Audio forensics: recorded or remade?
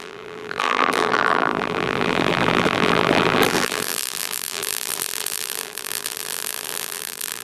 remade